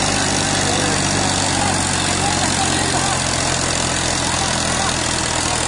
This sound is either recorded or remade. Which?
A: recorded